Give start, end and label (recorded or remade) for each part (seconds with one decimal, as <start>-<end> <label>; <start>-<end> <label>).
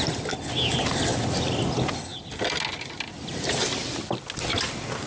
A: 0.0-5.1 recorded